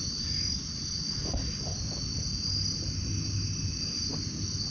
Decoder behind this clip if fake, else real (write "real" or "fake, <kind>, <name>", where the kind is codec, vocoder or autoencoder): real